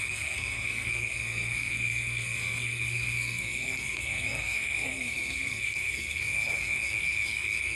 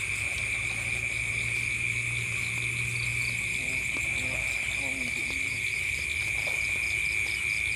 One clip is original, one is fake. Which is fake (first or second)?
first